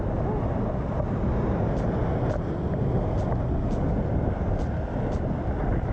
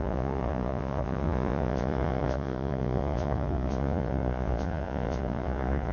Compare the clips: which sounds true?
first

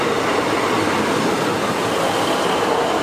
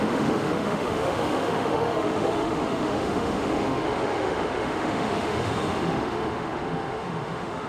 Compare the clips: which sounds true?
first